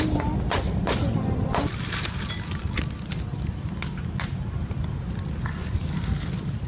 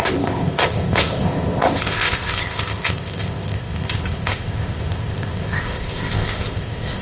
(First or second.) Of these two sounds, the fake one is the second